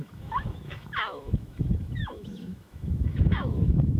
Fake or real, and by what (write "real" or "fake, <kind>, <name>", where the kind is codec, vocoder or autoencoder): fake, autoencoder, DAC-VAE